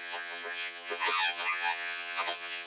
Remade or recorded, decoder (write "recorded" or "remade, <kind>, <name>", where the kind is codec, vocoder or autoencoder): remade, vocoder, HiFi-GAN